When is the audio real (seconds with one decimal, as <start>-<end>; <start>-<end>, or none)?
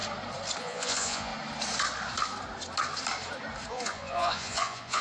0.0-0.6; 1.3-3.7